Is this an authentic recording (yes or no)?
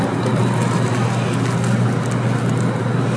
yes